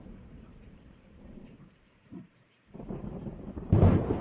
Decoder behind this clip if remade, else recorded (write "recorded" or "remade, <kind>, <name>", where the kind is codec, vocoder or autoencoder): remade, vocoder, BigVGAN v2